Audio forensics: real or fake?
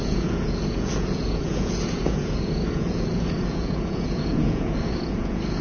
fake